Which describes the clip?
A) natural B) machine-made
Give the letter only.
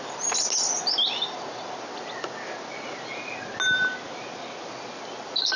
A